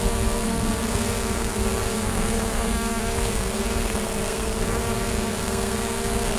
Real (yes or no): no